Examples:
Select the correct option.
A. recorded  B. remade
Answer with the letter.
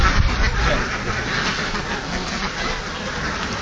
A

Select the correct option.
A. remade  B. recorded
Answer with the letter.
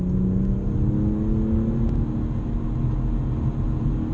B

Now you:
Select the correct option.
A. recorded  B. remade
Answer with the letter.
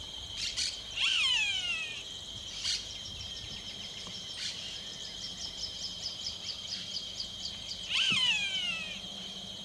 B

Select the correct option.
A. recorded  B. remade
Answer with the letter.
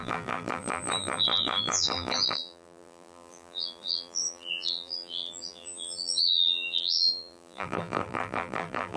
B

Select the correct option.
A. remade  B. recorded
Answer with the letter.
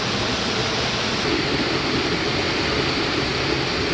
B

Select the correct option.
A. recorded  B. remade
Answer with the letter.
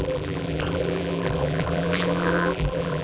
B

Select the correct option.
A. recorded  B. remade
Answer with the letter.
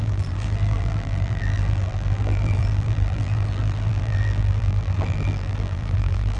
B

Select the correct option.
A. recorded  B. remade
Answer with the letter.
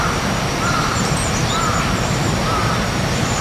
B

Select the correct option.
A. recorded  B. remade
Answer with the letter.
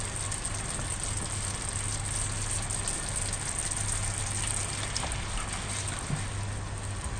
A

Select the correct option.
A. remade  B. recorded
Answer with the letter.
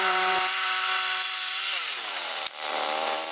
A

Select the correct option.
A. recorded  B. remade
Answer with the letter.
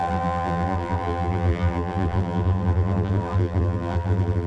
B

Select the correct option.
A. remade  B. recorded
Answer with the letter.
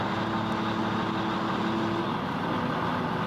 B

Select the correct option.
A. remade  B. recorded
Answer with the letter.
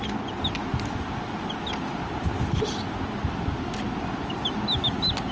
B